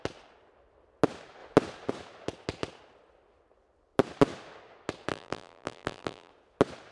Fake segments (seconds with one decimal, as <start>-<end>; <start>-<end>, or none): 5.1-6.3